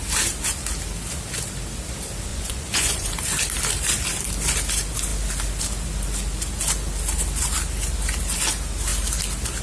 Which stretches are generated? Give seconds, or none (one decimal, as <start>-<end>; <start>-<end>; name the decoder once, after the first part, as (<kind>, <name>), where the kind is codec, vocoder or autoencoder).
2.3-3.1 (vocoder, Vocos)